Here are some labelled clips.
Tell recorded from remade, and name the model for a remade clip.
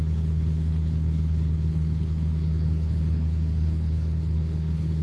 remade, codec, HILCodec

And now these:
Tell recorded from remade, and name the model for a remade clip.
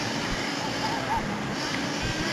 remade, vocoder, BigVGAN v2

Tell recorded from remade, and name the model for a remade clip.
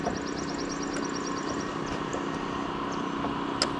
recorded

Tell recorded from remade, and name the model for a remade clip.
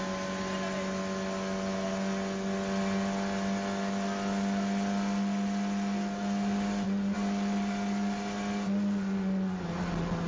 recorded